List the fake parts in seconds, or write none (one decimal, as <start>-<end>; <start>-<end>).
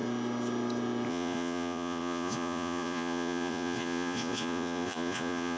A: 1.1-5.6